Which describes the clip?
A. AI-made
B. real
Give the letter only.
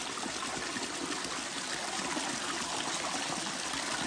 B